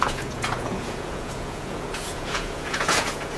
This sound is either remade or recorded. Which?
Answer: remade